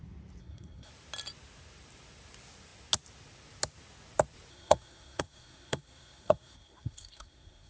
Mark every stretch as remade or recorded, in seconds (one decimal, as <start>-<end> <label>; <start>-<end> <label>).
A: 0.0-0.4 recorded; 0.4-0.9 remade; 0.9-4.5 recorded; 4.5-7.7 remade